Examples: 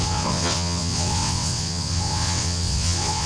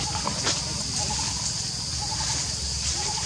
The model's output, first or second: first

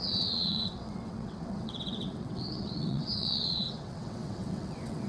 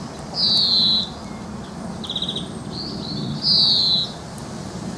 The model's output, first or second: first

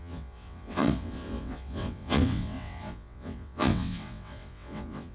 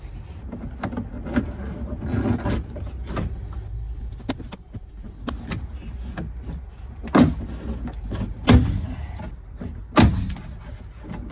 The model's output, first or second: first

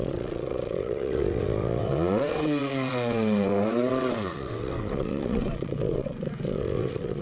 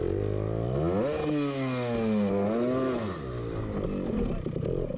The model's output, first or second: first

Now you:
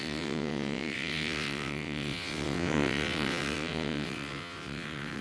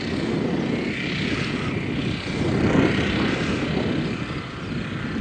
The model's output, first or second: first